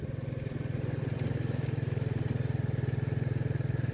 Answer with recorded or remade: recorded